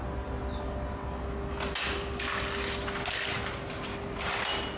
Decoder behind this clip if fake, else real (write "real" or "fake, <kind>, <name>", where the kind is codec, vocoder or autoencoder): real